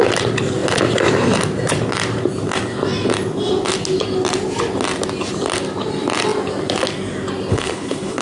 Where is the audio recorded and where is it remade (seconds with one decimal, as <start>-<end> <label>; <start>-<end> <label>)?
0.0-7.5 recorded; 7.5-8.2 remade

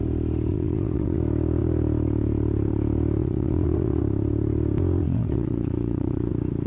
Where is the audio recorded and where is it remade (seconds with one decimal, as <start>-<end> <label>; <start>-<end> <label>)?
0.0-0.5 recorded; 0.5-1.2 remade; 1.2-3.2 recorded; 3.2-4.0 remade; 4.0-5.0 recorded; 5.0-6.3 remade; 6.3-6.7 recorded